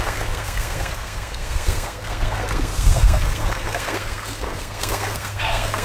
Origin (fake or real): fake